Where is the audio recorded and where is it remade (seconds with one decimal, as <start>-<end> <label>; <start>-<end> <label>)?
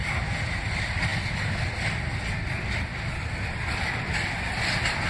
0.0-5.1 recorded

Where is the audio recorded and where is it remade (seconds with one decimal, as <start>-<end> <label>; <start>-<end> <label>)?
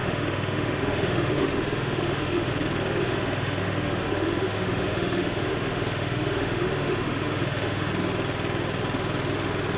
0.0-2.5 remade; 2.5-3.0 recorded; 3.0-7.9 remade; 7.9-9.8 recorded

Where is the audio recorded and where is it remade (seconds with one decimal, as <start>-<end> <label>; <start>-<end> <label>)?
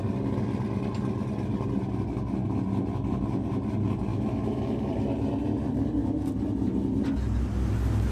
0.0-4.1 recorded; 4.1-4.9 remade; 4.9-8.1 recorded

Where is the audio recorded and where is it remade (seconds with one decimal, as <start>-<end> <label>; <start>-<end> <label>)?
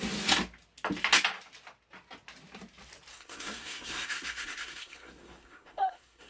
0.0-3.1 recorded; 3.1-6.3 remade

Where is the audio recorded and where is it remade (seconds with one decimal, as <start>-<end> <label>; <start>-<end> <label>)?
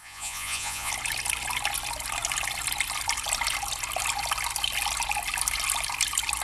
0.0-0.9 remade; 0.9-6.4 recorded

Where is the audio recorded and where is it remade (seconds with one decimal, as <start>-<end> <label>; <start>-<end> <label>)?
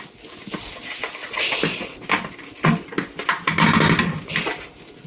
0.0-5.1 recorded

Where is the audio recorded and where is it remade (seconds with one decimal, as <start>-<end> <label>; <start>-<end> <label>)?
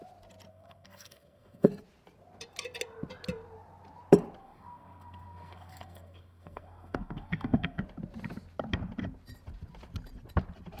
0.0-0.5 recorded; 0.5-1.7 remade; 1.7-4.4 recorded; 4.4-7.8 remade; 7.8-10.8 recorded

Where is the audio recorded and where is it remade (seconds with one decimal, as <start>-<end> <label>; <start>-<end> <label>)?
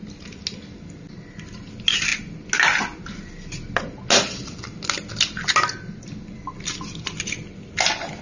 0.0-8.2 recorded